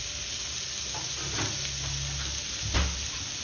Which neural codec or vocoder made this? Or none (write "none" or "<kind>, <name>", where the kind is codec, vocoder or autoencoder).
none